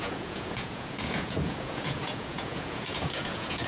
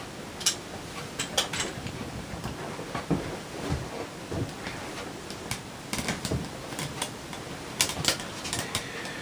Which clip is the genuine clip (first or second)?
second